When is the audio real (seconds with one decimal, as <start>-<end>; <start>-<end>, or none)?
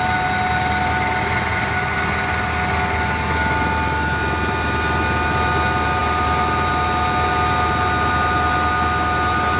0.0-9.6